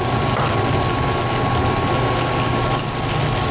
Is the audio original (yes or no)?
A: yes